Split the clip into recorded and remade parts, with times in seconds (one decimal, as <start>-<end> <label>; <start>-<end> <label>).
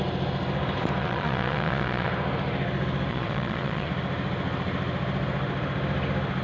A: 0.0-1.0 recorded; 1.0-2.1 remade; 2.1-3.1 recorded; 3.1-3.9 remade; 3.9-6.4 recorded